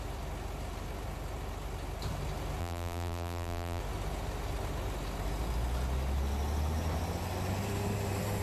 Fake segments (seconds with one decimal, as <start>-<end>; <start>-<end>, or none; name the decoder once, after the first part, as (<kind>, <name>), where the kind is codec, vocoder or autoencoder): 2.6-3.8 (vocoder, BigVGAN v2)